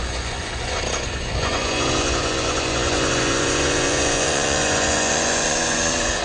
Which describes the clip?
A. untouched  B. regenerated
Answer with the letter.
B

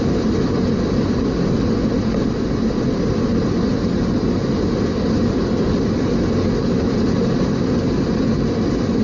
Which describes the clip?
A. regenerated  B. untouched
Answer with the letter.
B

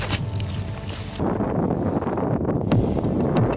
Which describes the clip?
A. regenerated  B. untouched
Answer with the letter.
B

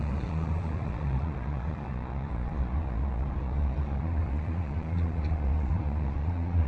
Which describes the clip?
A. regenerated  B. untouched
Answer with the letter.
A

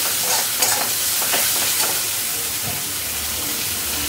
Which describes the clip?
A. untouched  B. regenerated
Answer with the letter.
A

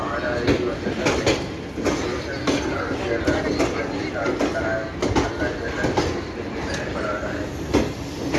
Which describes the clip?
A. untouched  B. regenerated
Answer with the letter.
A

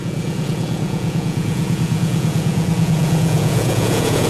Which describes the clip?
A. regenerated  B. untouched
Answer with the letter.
A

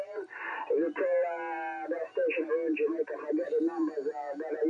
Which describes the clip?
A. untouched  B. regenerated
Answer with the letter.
A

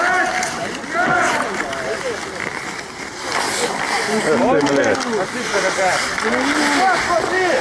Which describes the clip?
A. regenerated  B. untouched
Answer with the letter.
B